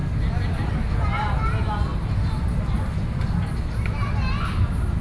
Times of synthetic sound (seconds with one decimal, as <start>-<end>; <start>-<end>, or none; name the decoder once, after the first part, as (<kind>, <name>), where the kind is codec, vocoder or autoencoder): none